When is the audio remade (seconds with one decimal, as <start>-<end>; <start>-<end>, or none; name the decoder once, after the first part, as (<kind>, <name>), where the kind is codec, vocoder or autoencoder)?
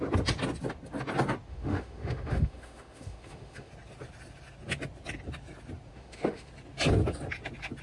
1.5-3.7 (autoencoder, DAC-VAE); 5.9-6.5